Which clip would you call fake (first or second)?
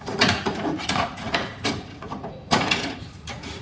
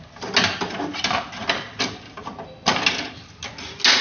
first